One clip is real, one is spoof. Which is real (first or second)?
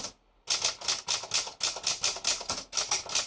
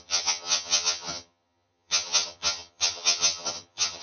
first